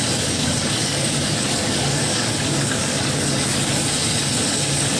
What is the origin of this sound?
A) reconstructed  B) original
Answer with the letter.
A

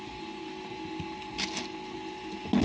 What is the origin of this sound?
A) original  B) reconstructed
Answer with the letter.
A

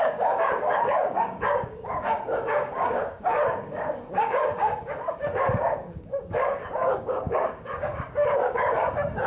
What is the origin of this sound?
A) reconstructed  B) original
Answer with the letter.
A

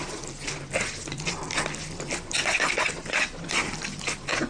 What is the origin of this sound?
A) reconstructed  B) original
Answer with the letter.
B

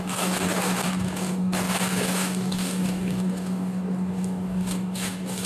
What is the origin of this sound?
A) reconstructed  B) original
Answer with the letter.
A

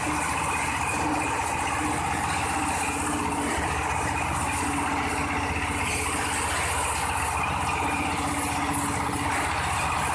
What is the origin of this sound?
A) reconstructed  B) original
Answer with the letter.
B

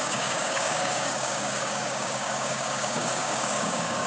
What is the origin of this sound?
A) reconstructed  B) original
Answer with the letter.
A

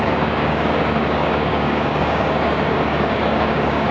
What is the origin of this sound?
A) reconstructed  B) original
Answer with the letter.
A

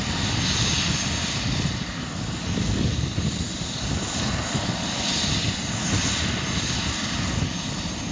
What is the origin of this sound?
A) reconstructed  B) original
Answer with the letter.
B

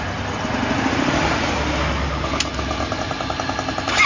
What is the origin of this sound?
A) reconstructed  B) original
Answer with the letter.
B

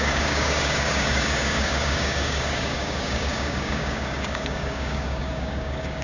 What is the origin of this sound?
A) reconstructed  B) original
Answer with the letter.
A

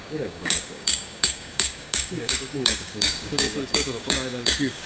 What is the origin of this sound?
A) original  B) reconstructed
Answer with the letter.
B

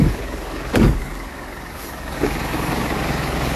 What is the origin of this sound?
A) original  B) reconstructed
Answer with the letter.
B